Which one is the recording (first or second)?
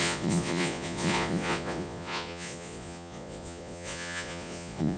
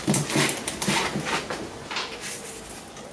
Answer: second